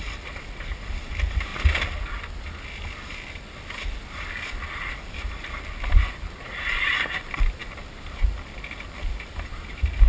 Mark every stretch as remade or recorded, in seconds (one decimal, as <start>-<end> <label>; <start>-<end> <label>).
0.0-10.1 recorded